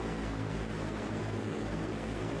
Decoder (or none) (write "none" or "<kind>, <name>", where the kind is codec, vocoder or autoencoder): codec, SNAC